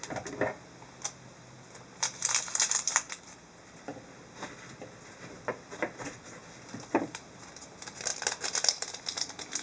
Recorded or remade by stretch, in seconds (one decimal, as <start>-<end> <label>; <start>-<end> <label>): 0.0-9.6 recorded